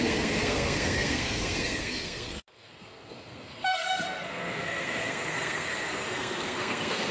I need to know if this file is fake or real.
fake